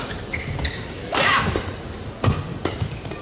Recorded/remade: recorded